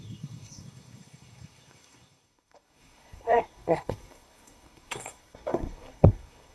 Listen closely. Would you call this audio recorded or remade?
remade